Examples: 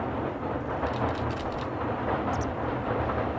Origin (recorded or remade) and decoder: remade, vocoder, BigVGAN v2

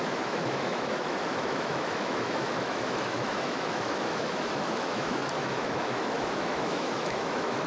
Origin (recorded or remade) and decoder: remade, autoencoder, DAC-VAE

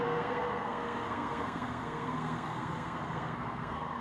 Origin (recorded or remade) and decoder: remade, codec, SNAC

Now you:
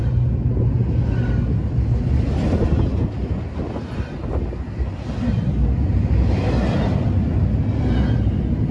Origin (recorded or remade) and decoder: recorded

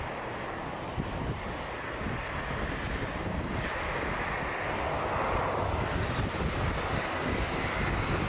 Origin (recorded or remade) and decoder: recorded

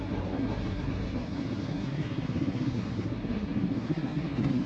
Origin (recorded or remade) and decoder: remade, codec, SNAC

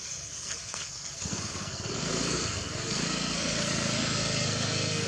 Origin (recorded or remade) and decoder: remade, codec, SNAC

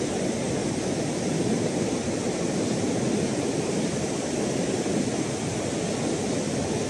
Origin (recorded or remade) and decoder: recorded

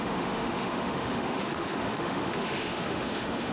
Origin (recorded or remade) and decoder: remade, autoencoder, DAC-VAE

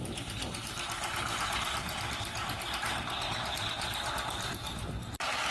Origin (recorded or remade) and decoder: remade, vocoder, BigVGAN v2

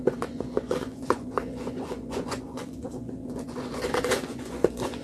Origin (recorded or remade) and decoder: remade, vocoder, Vocos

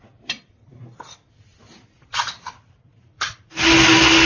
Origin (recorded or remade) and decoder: recorded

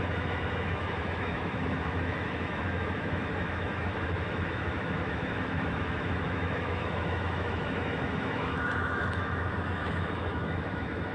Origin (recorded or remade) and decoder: remade, autoencoder, DAC-VAE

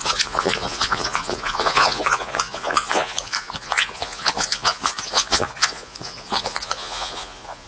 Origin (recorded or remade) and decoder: remade, vocoder, Vocos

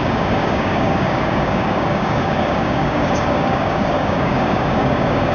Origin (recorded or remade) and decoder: remade, codec, DAC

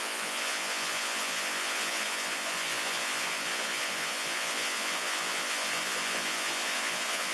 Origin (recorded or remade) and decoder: remade, vocoder, Vocos